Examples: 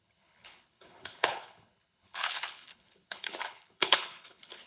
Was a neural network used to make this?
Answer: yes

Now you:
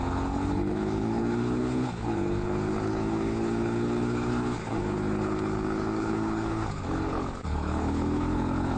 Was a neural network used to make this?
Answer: yes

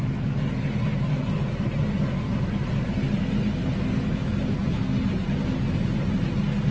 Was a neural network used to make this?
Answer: no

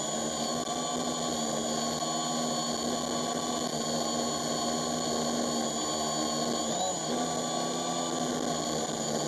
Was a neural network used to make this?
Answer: no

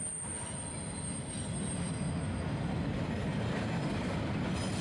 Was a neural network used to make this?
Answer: no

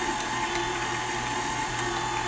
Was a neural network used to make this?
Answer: no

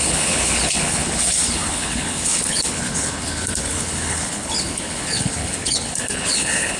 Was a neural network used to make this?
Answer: yes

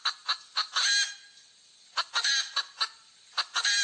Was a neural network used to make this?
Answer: no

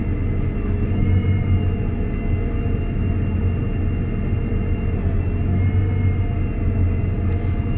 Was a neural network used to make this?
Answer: no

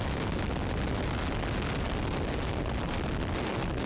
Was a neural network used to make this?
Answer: no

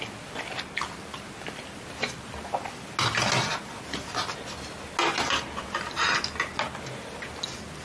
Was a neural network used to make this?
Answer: no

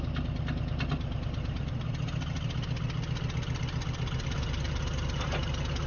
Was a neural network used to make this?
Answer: no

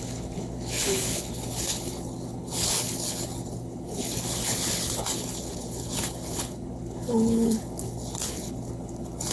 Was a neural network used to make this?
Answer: yes